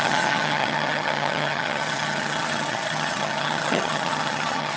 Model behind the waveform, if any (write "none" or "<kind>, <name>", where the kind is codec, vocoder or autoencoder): vocoder, HiFi-GAN